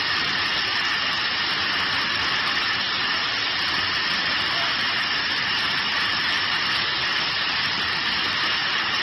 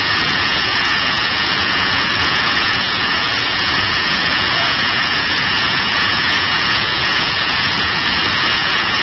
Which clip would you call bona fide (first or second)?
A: first